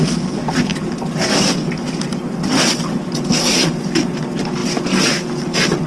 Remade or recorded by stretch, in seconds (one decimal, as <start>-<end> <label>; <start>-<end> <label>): 0.0-5.9 recorded